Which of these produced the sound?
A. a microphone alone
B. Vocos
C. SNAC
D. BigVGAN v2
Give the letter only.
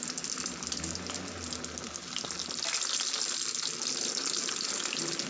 A